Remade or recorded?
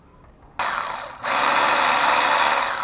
recorded